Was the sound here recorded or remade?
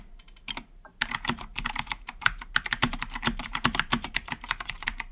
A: remade